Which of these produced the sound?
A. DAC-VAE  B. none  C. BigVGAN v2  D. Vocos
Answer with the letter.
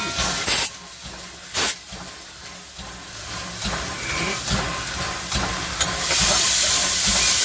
B